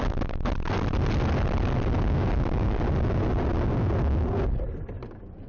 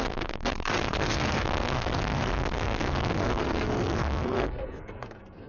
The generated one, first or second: second